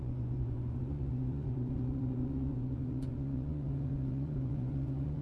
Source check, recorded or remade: remade